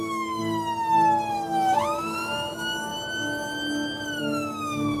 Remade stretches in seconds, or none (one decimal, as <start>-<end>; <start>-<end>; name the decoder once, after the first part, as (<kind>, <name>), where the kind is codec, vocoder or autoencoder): 0.0-0.4 (autoencoder, DAC-VAE); 1.3-2.9; 4.2-5.0